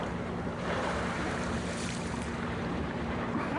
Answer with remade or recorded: remade